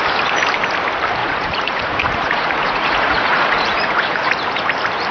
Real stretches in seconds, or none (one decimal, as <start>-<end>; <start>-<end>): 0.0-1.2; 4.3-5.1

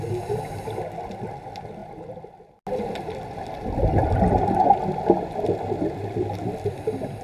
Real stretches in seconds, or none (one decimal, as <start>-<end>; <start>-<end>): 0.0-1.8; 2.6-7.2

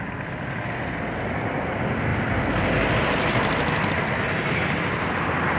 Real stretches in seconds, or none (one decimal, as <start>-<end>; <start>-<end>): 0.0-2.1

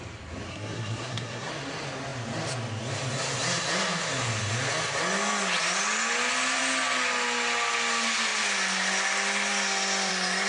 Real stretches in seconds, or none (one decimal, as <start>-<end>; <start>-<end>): 0.0-0.5; 1.5-10.5

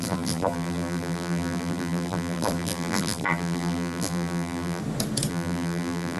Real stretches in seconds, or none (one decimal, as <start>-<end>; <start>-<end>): 4.8-5.3

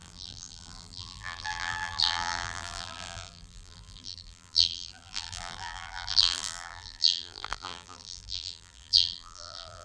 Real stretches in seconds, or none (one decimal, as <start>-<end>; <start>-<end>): none

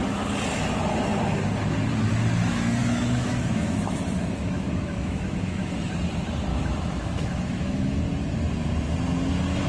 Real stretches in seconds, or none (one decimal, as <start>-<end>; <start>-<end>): 0.0-2.8; 5.9-6.5; 8.0-9.7